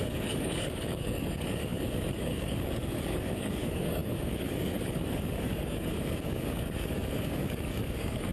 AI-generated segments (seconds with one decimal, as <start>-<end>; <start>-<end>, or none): 0.0-8.3